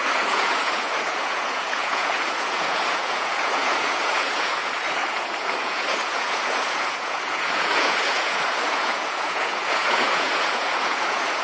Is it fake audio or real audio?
fake